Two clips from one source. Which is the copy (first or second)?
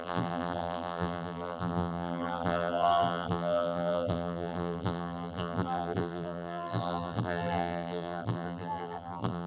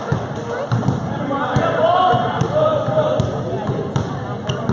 first